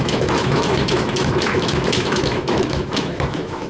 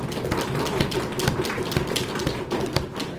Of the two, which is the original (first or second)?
second